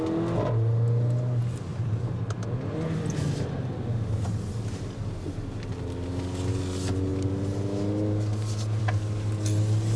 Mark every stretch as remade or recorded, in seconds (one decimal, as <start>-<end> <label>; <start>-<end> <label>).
0.0-10.0 recorded